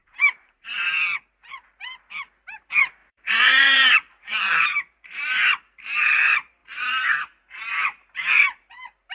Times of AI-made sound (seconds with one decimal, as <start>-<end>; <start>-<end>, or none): 0.0-6.6; 7.2-9.1